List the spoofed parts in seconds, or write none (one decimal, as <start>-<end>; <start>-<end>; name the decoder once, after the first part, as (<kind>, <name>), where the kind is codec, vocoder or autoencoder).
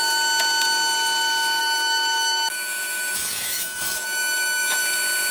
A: 1.6-4.8 (autoencoder, DAC-VAE)